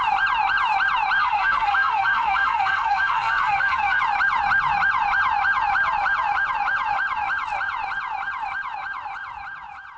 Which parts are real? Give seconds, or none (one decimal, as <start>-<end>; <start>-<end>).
0.0-1.2; 4.0-10.0